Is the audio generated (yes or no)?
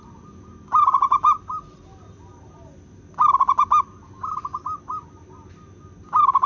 no